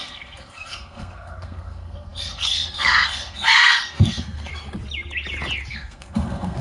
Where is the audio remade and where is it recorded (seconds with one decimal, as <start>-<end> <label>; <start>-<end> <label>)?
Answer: 0.0-4.5 remade; 4.5-5.7 recorded; 5.7-6.6 remade